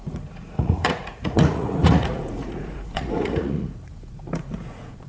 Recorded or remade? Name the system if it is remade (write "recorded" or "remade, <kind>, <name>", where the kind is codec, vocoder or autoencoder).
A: remade, vocoder, Vocos